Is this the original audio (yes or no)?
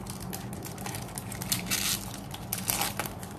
yes